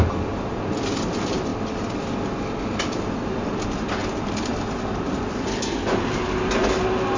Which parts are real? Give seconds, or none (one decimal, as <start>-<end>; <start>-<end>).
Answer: 0.0-7.2